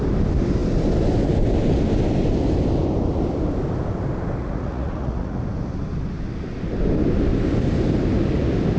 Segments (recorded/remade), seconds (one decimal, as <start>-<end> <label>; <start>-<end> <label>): 0.0-4.4 recorded; 4.4-5.4 remade; 5.4-8.8 recorded

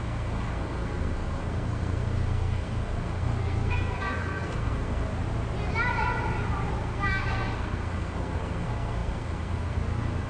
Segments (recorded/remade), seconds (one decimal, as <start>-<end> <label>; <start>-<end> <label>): 0.0-5.1 remade; 5.1-6.7 recorded; 6.7-10.3 remade

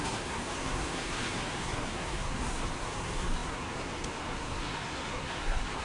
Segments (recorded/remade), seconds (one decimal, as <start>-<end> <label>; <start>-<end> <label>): 0.0-5.8 remade

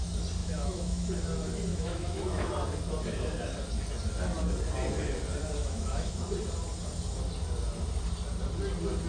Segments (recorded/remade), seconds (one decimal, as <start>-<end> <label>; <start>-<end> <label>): 0.0-0.4 recorded; 0.4-1.1 remade; 1.1-1.7 recorded; 1.7-2.5 remade; 2.5-5.6 recorded; 5.6-6.1 remade; 6.1-9.1 recorded